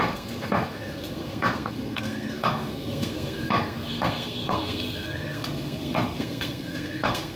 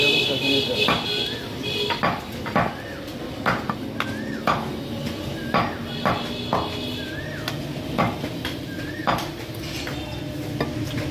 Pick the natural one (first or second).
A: second